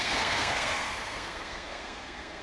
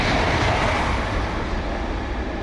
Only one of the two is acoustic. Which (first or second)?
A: second